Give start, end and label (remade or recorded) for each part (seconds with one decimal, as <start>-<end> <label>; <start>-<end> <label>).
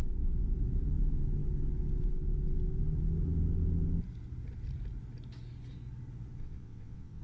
0.0-6.4 recorded; 6.4-7.2 remade